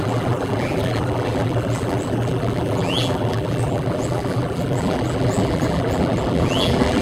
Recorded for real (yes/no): no